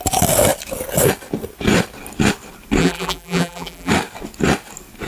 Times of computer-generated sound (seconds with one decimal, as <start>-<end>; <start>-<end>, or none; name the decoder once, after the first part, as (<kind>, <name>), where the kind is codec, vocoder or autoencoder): 2.8-3.9 (vocoder, BigVGAN v2)

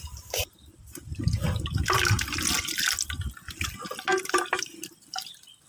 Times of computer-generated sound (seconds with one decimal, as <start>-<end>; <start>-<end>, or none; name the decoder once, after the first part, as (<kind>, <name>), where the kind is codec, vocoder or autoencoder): 0.0-0.8 (vocoder, BigVGAN v2); 4.2-5.7

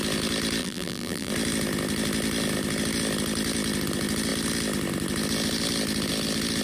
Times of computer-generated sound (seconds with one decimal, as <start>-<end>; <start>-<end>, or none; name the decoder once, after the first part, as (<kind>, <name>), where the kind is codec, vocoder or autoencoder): 0.6-1.3 (vocoder, BigVGAN v2)

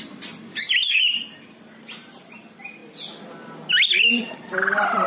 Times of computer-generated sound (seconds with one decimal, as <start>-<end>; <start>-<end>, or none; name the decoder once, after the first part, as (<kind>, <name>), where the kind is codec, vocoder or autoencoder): 0.0-2.8 (vocoder, BigVGAN v2); 4.1-5.1